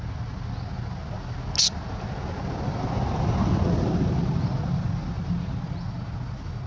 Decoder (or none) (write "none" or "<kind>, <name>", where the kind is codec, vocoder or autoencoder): none